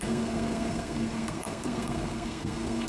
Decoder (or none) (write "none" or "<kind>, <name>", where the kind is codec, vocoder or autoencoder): codec, SNAC